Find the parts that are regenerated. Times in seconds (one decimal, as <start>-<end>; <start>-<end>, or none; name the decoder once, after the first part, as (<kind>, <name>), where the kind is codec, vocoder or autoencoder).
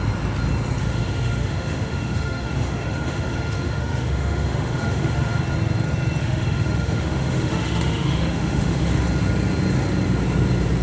0.8-5.4 (autoencoder, DAC-VAE); 6.2-8.9